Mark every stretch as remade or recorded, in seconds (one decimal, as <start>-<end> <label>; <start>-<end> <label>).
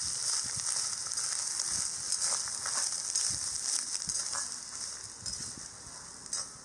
0.0-6.6 recorded